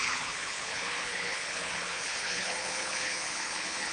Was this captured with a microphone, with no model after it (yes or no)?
no